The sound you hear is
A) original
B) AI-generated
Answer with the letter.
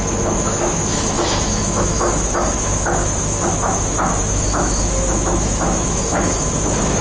B